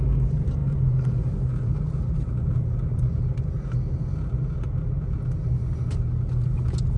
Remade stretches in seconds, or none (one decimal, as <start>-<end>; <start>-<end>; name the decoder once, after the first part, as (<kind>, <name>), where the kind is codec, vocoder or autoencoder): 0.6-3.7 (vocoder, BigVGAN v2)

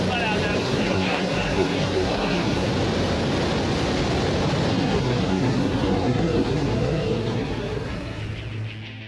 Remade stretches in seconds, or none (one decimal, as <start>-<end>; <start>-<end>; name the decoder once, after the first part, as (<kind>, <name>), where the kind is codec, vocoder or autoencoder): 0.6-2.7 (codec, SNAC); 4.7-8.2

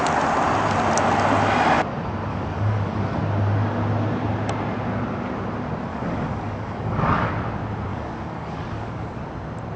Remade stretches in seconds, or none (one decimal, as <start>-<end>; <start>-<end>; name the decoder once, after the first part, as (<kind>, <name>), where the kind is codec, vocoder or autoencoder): 2.3-3.2 (codec, DAC); 5.9-7.3; 7.9-9.2

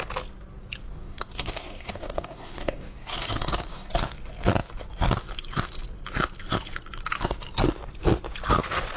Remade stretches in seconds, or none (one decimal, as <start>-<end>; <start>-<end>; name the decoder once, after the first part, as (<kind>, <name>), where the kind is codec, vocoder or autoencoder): 0.9-3.9 (codec, DAC)

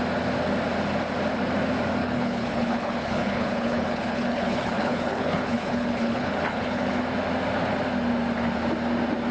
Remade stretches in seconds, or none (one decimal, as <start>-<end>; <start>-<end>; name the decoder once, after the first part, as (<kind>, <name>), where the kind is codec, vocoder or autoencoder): 2.0-7.0 (codec, HILCodec)